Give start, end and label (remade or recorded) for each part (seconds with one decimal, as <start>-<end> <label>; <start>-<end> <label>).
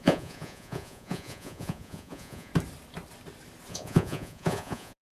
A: 0.0-2.5 remade; 2.5-3.7 recorded; 3.7-5.1 remade